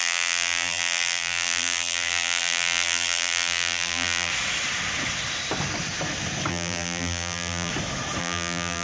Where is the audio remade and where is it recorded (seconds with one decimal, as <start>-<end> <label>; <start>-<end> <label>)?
0.0-4.3 remade; 4.3-6.5 recorded; 6.5-7.7 remade; 7.7-8.2 recorded; 8.2-8.8 remade